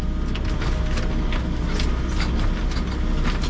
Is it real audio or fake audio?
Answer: real